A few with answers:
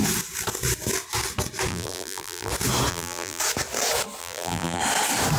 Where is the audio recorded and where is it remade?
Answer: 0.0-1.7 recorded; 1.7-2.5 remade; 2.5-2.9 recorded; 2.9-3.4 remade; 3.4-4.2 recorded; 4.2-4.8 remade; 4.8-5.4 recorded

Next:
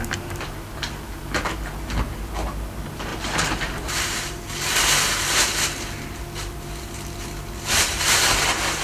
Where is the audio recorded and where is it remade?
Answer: 0.0-3.1 recorded; 3.1-4.4 remade; 4.4-8.8 recorded

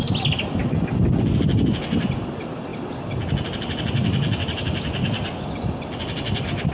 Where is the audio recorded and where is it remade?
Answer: 0.0-6.7 recorded

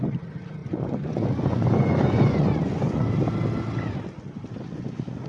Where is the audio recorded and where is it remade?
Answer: 0.0-0.6 recorded; 0.6-3.1 remade; 3.1-5.3 recorded